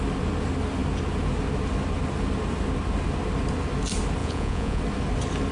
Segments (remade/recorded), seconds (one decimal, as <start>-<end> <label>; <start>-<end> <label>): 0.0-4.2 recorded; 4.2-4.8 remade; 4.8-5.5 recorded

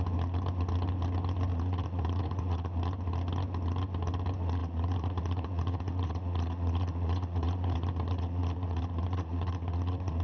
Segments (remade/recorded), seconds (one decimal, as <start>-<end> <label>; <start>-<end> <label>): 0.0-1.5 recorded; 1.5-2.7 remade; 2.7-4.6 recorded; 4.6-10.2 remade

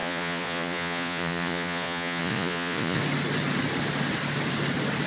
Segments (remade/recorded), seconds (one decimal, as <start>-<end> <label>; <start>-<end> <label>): 0.0-3.0 remade; 3.0-5.1 recorded